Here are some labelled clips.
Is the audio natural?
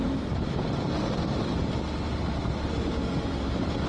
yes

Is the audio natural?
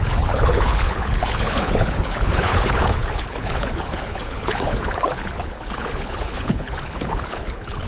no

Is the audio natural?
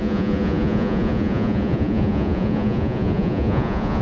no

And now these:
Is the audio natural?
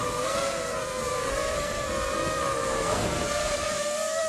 no